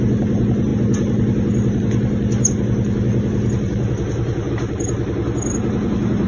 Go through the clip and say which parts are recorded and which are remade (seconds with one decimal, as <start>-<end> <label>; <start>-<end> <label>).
0.0-6.3 recorded